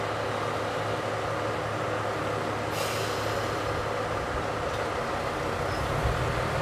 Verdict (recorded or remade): recorded